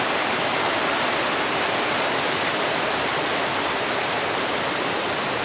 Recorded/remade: recorded